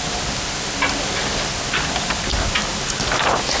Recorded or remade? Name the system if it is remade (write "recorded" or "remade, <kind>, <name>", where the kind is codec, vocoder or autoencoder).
recorded